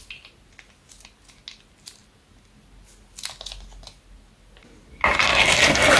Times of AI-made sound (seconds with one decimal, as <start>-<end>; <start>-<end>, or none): none